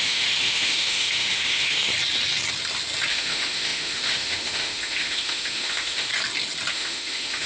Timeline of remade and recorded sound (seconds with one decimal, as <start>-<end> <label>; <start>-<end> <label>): 0.0-1.9 remade; 1.9-3.1 recorded; 3.1-6.1 remade; 6.1-6.7 recorded; 6.7-7.5 remade